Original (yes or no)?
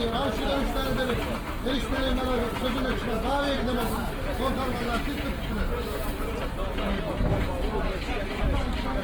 yes